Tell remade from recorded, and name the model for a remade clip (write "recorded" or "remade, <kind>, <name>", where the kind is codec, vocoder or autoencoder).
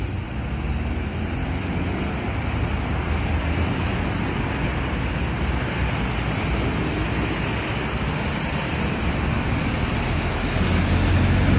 recorded